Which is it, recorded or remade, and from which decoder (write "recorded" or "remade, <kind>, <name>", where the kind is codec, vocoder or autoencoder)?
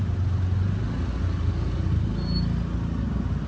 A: recorded